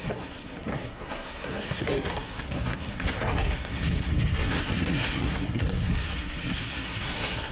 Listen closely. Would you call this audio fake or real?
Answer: fake